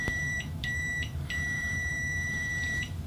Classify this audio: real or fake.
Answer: fake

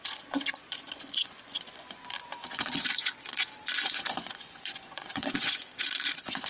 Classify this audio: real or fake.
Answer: fake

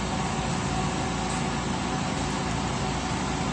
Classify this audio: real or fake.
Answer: real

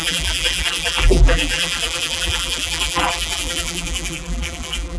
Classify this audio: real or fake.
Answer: fake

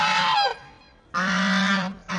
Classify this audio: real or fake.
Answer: fake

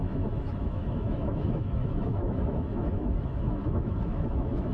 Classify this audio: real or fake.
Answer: fake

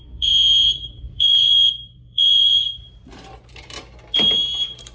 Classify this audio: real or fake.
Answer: fake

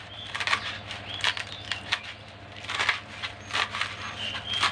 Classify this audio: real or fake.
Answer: real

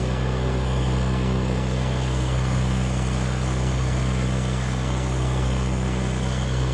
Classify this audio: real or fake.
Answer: fake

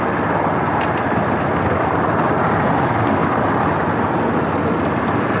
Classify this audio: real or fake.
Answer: real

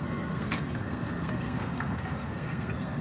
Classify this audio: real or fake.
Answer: fake